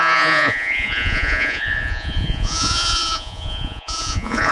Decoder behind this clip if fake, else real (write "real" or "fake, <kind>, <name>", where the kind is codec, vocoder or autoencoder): fake, vocoder, Vocos